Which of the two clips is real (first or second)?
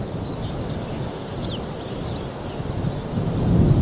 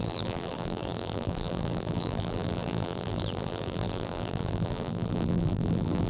first